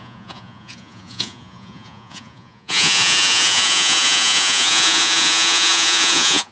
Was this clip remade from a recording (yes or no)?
yes